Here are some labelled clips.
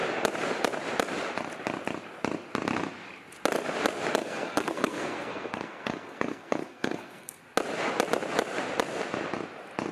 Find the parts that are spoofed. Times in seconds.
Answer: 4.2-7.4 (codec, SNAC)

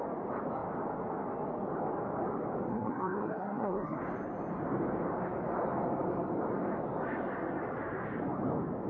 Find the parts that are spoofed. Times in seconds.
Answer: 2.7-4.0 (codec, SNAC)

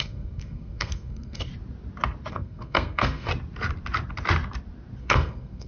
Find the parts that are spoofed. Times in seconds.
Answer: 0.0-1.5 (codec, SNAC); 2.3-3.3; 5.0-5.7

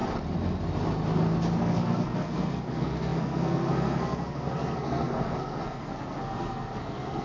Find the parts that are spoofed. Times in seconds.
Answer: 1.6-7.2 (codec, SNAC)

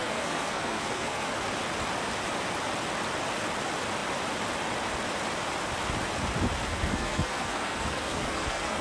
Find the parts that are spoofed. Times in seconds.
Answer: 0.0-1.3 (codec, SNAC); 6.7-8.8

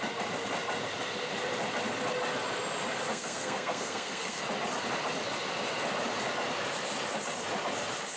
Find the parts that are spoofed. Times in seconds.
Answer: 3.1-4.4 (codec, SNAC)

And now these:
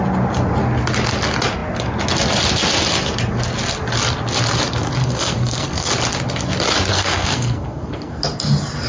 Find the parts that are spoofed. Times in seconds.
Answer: 5.0-5.9 (codec, SNAC); 6.9-8.2

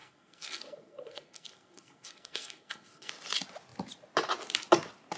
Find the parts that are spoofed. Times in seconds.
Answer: 0.0-3.1 (codec, SNAC)